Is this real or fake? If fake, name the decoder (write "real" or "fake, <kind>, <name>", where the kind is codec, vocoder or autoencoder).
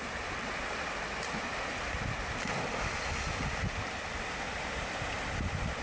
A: real